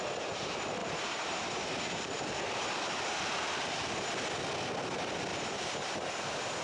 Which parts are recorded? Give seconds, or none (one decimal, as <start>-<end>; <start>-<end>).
0.0-0.8; 2.3-5.3; 6.1-6.6